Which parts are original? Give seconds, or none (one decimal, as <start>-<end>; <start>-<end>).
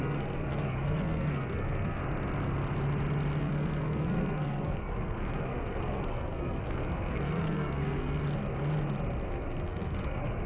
2.0-3.4; 8.2-9.3